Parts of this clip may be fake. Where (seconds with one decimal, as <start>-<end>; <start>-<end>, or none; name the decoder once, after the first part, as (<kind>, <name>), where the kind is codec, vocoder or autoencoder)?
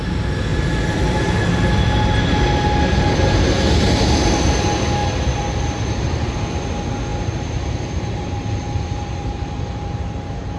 0.5-1.3 (vocoder, BigVGAN v2); 5.0-6.1; 7.1-10.6